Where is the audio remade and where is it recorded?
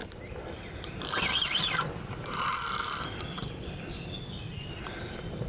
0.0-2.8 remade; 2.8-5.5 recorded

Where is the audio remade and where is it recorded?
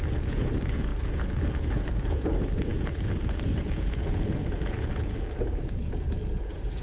0.0-6.8 remade